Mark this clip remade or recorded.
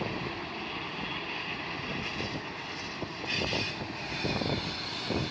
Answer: recorded